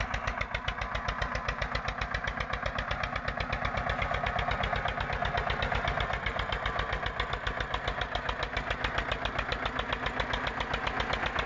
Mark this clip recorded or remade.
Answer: recorded